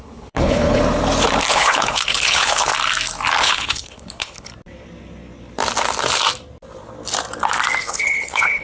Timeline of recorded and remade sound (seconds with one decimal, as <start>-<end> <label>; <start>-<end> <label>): 0.0-0.8 remade; 0.8-1.5 recorded; 1.5-2.7 remade; 2.7-3.4 recorded; 3.4-4.5 remade; 4.5-7.8 recorded; 7.8-8.6 remade